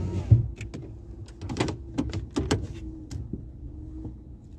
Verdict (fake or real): real